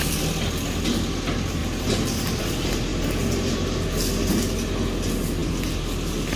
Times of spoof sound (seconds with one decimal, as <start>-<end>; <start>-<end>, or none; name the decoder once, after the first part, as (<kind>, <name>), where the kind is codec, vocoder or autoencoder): none